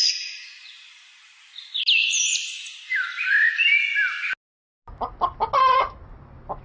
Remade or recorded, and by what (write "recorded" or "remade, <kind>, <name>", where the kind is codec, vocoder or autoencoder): recorded